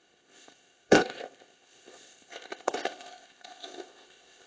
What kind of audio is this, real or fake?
fake